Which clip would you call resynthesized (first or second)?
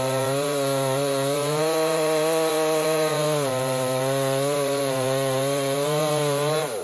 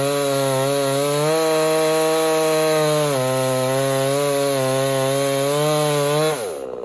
first